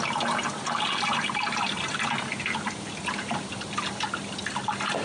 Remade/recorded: recorded